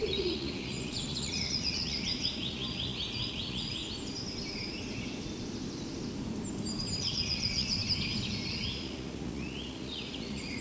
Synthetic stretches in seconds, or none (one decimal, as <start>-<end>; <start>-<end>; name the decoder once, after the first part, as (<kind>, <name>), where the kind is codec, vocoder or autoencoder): 0.0-3.8 (vocoder, Vocos); 7.0-7.8; 8.5-10.6